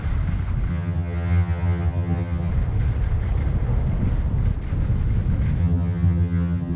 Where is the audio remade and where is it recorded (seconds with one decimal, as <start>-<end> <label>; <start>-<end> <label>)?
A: 0.0-0.7 recorded; 0.7-2.5 remade; 2.5-5.6 recorded; 5.6-6.8 remade